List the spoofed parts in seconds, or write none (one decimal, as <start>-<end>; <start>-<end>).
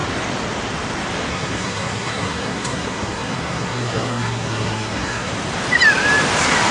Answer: 1.3-5.3